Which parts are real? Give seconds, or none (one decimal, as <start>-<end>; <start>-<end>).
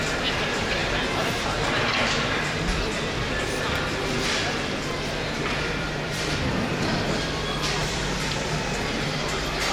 none